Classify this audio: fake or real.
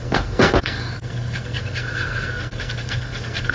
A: fake